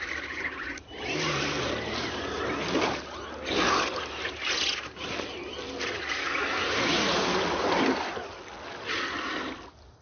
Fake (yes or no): no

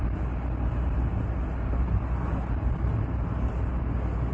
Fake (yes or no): no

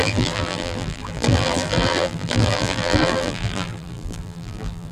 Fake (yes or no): yes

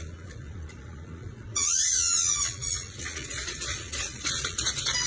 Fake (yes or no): yes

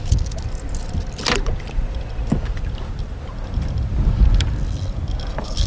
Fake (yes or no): no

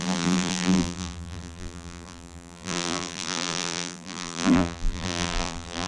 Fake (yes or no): yes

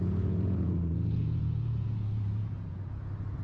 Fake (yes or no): yes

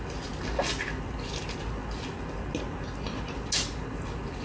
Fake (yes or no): no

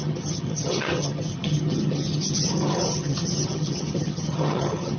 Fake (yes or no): yes